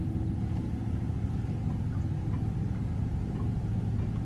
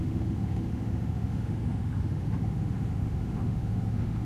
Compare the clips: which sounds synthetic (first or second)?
second